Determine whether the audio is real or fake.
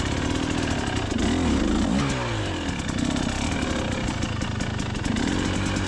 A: real